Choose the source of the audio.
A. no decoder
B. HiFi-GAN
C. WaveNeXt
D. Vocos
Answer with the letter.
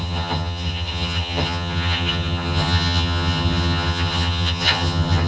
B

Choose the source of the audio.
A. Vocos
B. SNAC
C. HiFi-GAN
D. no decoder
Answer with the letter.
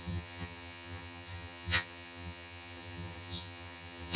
C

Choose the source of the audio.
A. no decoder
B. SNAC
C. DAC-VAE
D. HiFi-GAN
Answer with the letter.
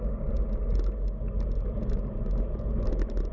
A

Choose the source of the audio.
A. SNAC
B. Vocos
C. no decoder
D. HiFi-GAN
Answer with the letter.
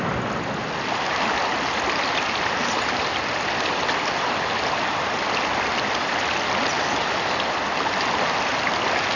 C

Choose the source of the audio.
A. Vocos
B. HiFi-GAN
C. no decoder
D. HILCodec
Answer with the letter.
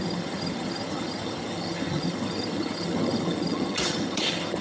B